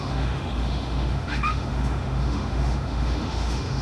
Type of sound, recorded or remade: remade